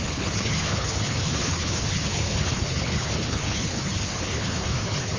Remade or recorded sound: remade